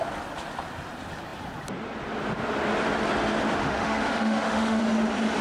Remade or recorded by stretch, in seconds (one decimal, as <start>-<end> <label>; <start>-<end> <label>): 0.0-3.6 recorded; 3.6-4.8 remade; 4.8-5.4 recorded